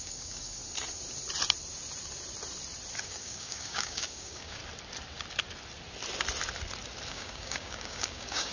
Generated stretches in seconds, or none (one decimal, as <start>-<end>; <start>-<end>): 0.0-0.6; 3.0-4.6; 7.1-8.5